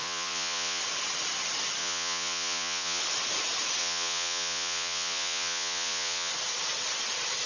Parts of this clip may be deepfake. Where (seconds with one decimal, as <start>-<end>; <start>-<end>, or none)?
0.0-0.8; 1.8-3.0; 3.8-6.3